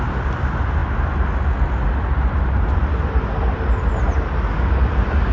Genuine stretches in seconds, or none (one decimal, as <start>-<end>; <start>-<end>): 0.0-5.3